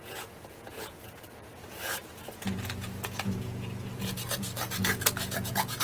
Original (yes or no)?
no